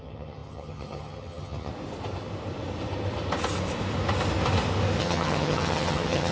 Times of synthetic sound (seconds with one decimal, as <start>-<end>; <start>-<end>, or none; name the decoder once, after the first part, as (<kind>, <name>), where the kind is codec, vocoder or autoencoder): 0.0-1.7 (vocoder, HiFi-GAN); 5.0-6.3